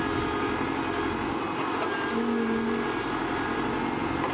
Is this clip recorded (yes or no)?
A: yes